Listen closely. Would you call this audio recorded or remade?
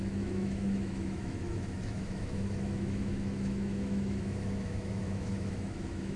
remade